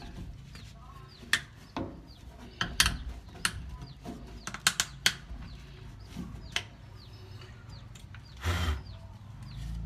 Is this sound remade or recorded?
recorded